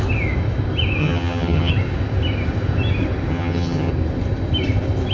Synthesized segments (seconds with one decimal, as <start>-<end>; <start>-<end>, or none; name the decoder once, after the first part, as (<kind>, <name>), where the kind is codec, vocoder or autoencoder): 1.0-1.7 (vocoder, HiFi-GAN); 3.3-3.9